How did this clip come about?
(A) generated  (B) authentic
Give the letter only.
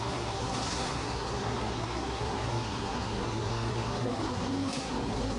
A